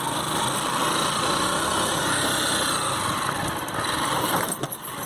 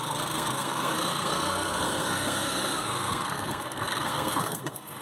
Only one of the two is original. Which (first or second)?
first